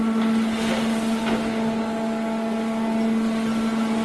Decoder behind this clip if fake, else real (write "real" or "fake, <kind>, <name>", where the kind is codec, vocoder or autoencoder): real